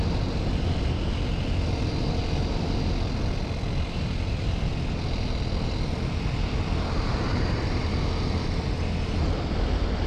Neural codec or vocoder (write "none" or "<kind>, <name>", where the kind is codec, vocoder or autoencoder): none